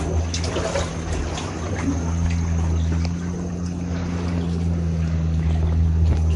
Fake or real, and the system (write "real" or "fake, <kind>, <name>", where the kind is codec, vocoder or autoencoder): real